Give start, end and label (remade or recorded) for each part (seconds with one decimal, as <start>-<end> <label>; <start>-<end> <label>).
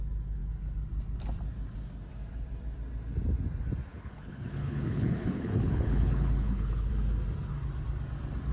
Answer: 0.0-3.9 recorded; 3.9-6.9 remade; 6.9-8.5 recorded